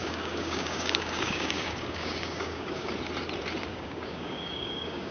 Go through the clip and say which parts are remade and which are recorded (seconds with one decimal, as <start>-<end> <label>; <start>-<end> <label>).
0.0-2.9 remade; 2.9-3.7 recorded; 3.7-5.1 remade